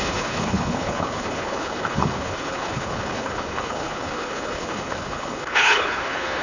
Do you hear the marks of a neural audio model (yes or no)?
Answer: yes